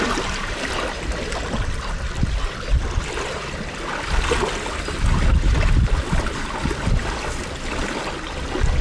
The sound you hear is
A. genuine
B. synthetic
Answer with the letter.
A